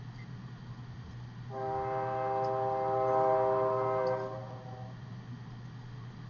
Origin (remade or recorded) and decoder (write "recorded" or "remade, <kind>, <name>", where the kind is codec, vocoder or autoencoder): recorded